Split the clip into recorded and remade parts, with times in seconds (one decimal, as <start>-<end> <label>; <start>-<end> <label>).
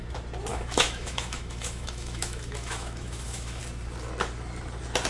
0.0-0.5 recorded; 0.5-3.6 remade; 3.6-5.1 recorded